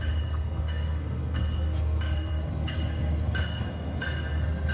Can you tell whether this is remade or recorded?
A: remade